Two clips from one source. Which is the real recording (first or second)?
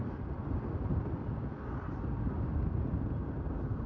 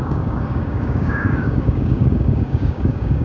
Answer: first